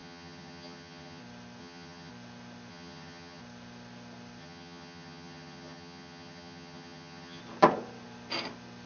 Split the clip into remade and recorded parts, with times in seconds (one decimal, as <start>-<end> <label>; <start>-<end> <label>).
0.0-1.2 remade; 1.2-1.6 recorded; 1.6-2.1 remade; 2.1-2.7 recorded; 2.7-3.4 remade; 3.4-4.4 recorded; 4.4-7.4 remade; 7.4-8.9 recorded